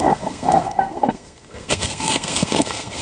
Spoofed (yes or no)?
yes